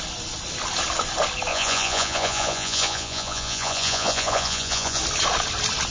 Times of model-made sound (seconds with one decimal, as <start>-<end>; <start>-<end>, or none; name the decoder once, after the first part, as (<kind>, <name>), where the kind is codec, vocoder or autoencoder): 1.5-5.0 (vocoder, Vocos)